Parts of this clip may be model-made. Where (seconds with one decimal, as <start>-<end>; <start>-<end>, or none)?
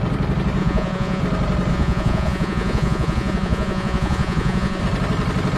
0.6-1.2; 1.7-4.8